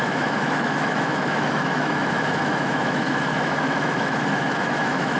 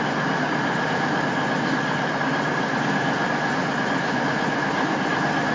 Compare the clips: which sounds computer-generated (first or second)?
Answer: first